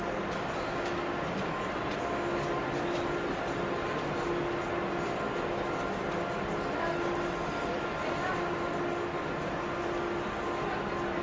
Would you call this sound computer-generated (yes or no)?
no